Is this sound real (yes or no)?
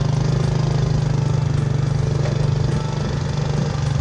yes